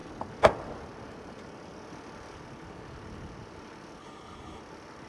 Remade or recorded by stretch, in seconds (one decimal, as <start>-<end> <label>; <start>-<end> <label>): 0.0-4.0 recorded; 4.0-4.6 remade; 4.6-5.1 recorded